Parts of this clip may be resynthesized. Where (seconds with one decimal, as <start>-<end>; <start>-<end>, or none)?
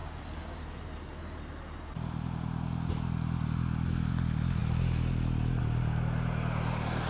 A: none